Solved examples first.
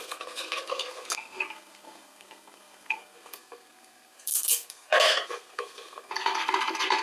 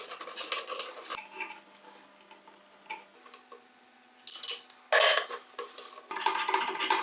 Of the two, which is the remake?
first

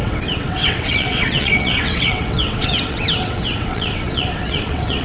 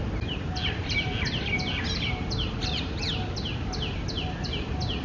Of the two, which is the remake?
first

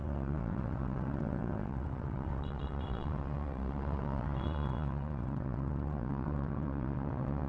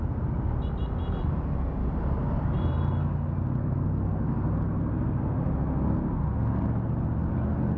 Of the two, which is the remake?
first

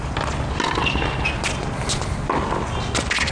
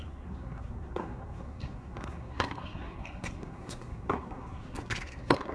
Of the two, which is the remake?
second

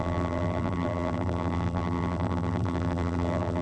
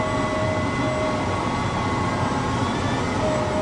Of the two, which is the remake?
first